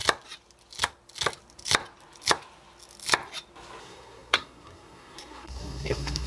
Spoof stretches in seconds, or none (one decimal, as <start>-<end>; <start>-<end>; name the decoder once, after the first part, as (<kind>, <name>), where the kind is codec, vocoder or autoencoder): 3.8-6.3 (codec, SNAC)